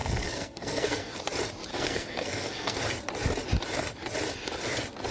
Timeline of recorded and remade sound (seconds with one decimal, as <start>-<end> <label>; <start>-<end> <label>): 0.0-1.2 remade; 1.2-1.7 recorded; 1.7-2.8 remade; 2.8-5.1 recorded